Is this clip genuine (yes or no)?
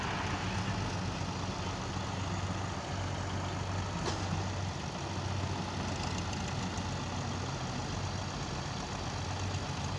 yes